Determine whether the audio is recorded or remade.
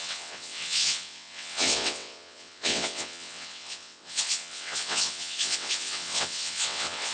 remade